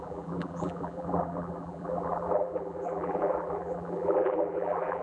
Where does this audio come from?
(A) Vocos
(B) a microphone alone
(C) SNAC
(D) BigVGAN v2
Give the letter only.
D